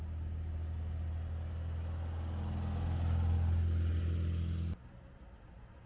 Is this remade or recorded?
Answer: recorded